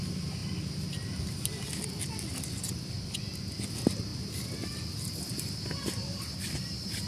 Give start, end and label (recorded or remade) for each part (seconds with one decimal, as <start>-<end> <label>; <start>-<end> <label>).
0.0-4.1 recorded; 4.1-7.1 remade